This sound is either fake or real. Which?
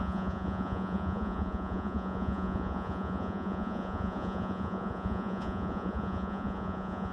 fake